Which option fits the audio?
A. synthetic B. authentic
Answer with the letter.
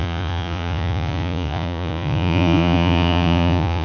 A